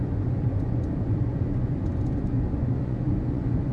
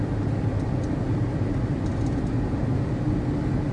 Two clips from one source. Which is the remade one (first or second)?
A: first